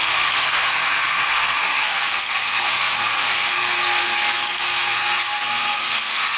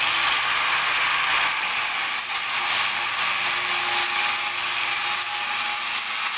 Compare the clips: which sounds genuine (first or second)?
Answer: second